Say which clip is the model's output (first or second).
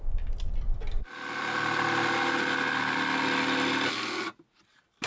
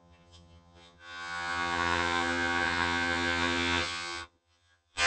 second